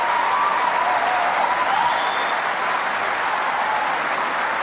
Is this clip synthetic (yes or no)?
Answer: no